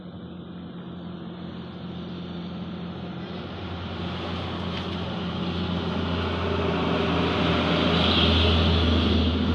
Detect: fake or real real